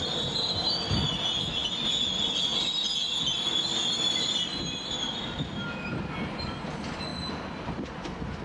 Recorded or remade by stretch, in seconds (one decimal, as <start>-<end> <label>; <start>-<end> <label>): 0.0-8.4 recorded